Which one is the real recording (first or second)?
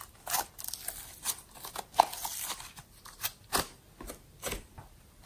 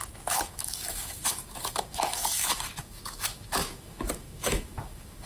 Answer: first